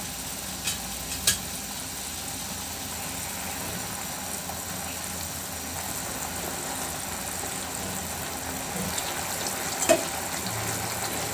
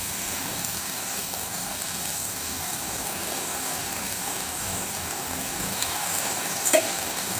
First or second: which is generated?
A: second